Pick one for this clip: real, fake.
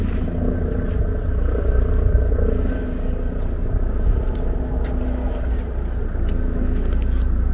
real